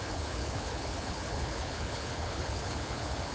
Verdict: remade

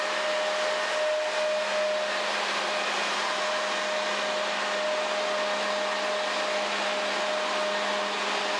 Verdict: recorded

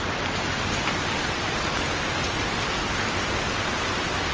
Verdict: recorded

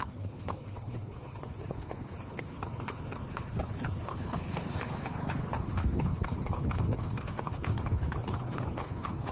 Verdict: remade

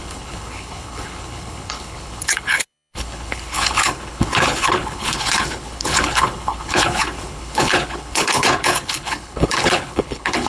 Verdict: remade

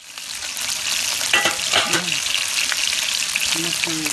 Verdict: recorded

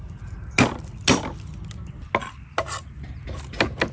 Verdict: recorded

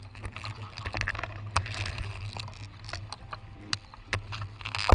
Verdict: recorded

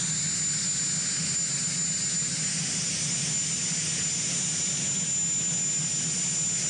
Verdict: recorded